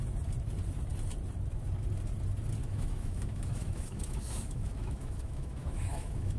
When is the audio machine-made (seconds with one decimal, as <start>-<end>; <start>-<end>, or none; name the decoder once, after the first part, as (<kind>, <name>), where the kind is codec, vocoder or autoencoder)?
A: 2.6-6.4 (autoencoder, DAC-VAE)